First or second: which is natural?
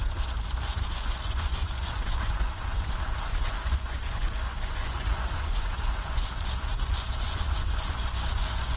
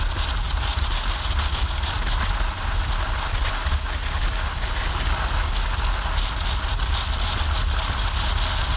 second